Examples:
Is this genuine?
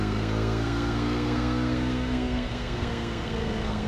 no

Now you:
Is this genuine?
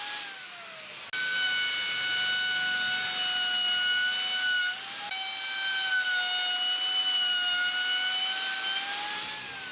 yes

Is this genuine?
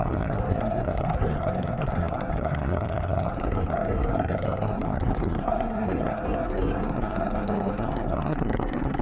no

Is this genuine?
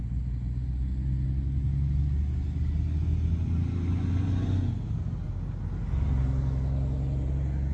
yes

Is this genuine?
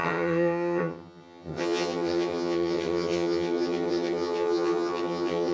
no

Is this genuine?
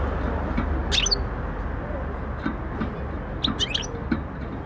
yes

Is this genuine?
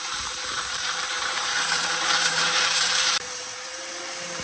no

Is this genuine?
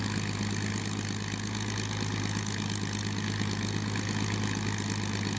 yes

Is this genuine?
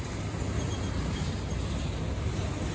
yes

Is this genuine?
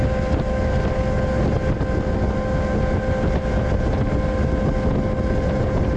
yes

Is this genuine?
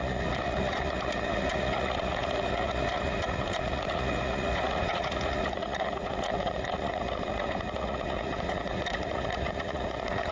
no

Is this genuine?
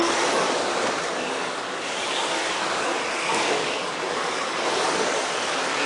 no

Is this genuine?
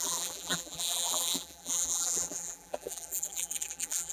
no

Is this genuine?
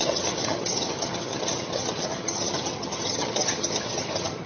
no